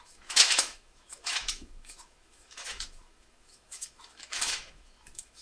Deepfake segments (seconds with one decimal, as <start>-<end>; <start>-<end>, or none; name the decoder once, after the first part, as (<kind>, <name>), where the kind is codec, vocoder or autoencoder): 0.0-5.4 (autoencoder, DAC-VAE)